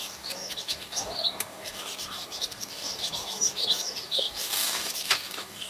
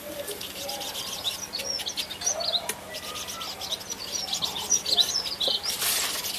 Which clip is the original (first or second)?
second